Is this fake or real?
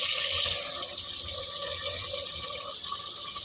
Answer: real